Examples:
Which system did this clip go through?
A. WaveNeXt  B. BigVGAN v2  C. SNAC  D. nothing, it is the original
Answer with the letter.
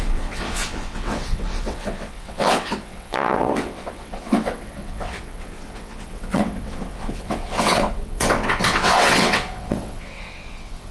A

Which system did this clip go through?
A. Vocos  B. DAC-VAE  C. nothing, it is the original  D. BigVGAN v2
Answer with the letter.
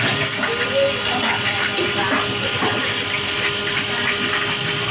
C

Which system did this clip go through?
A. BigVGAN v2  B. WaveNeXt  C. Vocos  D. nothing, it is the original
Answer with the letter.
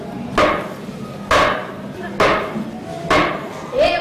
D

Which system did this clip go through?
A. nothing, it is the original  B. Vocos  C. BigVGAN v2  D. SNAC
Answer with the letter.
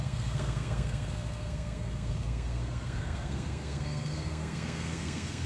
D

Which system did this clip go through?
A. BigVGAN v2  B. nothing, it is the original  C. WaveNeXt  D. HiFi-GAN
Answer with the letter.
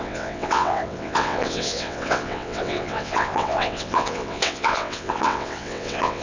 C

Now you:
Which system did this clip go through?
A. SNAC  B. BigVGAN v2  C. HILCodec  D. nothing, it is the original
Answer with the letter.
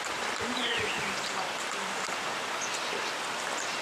B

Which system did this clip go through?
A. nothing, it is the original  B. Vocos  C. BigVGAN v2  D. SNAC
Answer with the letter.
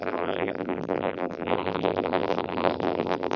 C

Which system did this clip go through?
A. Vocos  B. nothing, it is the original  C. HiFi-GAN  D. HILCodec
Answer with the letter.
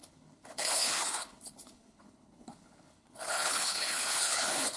D